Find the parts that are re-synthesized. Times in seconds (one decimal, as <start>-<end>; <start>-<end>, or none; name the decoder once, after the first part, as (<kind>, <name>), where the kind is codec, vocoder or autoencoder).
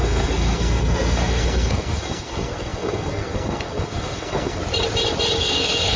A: 0.0-4.6 (codec, SNAC); 5.4-6.0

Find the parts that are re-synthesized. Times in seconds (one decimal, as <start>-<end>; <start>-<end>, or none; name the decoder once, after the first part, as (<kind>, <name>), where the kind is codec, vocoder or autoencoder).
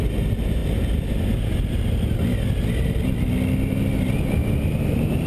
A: 4.4-5.3 (vocoder, BigVGAN v2)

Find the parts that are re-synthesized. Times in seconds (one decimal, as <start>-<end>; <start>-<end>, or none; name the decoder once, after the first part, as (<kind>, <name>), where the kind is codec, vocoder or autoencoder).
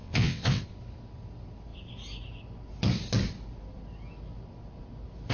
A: 0.0-0.6 (vocoder, WaveNeXt)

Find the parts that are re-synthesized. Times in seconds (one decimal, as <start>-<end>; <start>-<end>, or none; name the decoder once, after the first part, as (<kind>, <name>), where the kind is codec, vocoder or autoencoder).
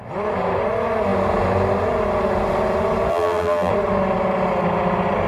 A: 3.1-3.7 (vocoder, BigVGAN v2)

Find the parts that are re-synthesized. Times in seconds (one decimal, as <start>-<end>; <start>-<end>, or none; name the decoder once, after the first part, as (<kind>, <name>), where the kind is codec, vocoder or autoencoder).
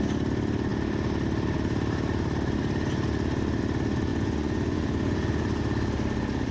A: 4.1-5.6 (vocoder, Vocos)